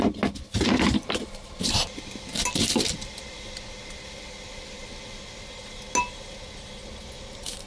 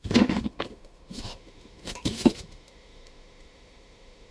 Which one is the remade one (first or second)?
second